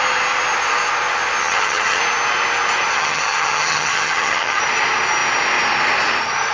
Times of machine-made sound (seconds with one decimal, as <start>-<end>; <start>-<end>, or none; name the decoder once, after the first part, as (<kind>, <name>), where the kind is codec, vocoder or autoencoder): 1.4-2.0 (vocoder, HiFi-GAN); 2.9-4.6